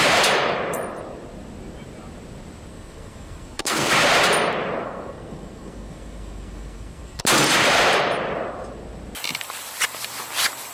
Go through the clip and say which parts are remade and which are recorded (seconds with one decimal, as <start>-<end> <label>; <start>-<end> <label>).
0.0-2.7 recorded; 2.7-3.9 remade; 3.9-4.8 recorded; 4.8-7.2 remade; 7.2-10.7 recorded